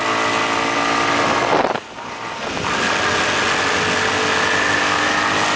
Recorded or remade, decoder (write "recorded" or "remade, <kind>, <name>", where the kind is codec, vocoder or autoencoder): recorded